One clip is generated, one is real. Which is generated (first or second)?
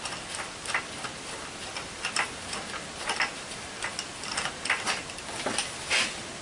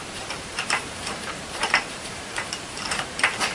second